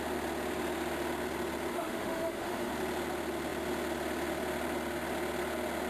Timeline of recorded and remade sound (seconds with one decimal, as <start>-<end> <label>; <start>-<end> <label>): 0.0-1.7 recorded; 1.7-2.7 remade; 2.7-5.9 recorded